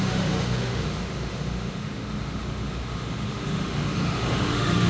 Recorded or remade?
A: remade